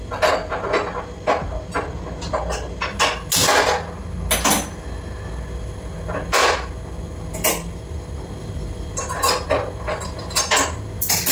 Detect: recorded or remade recorded